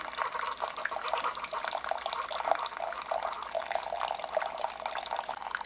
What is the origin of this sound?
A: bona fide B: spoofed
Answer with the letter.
A